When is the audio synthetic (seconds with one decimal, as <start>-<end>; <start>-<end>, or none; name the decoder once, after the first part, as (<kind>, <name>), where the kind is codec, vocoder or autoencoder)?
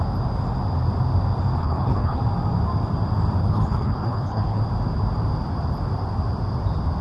1.6-2.2 (codec, HILCodec); 3.4-4.6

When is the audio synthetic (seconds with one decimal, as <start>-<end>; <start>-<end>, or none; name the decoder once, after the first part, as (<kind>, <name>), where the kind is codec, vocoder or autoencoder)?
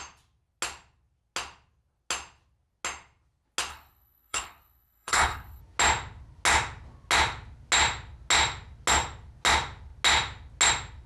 3.7-5.6 (codec, HILCodec)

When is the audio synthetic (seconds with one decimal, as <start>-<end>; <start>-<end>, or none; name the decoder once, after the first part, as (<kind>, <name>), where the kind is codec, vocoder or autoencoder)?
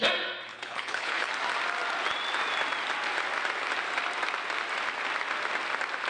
0.5-1.3 (codec, HILCodec)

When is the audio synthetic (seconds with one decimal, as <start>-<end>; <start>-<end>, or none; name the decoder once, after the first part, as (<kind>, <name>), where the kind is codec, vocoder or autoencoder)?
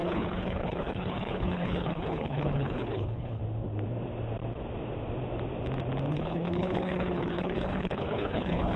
0.0-3.4 (codec, HILCodec); 6.1-8.8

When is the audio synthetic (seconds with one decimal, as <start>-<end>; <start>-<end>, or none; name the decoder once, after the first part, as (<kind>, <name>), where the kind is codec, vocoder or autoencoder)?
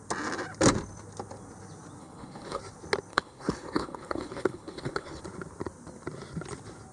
2.0-2.6 (codec, HILCodec); 3.1-5.2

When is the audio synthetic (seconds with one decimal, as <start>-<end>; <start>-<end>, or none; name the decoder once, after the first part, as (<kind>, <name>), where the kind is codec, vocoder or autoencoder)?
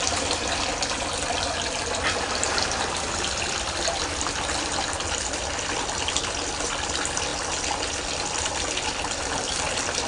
none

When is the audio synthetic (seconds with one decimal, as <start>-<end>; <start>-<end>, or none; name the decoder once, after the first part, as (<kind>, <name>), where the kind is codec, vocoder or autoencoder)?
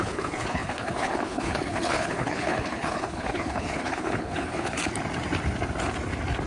0.0-4.8 (codec, HILCodec)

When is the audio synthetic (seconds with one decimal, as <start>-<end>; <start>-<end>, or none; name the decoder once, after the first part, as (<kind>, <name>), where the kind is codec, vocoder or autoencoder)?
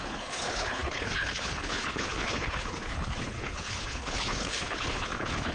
0.0-5.5 (codec, HILCodec)